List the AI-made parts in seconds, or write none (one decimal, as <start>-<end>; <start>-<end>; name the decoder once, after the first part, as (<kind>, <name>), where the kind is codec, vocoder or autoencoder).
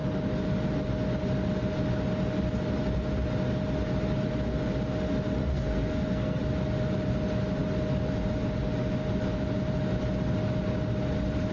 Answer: 5.4-6.4 (codec, SNAC)